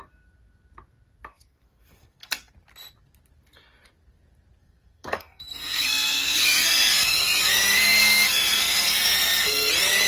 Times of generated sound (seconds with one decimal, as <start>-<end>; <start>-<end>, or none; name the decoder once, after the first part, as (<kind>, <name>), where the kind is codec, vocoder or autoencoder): 1.3-2.5 (codec, SNAC); 4.6-9.7